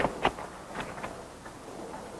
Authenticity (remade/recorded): recorded